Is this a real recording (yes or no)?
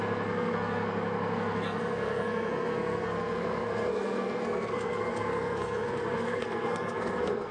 no